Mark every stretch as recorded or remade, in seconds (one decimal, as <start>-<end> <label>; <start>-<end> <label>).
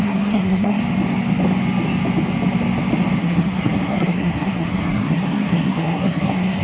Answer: 0.0-0.8 remade; 0.8-3.2 recorded; 3.2-6.6 remade